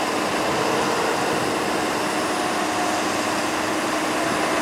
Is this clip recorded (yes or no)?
yes